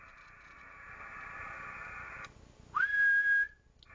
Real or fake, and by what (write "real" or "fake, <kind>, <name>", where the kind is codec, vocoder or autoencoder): real